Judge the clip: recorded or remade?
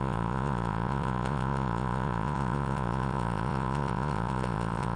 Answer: remade